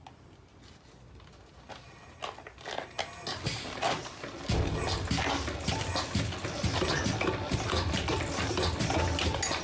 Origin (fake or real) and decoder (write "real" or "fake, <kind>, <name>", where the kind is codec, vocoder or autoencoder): real